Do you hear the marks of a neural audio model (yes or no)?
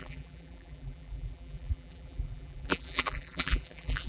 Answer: yes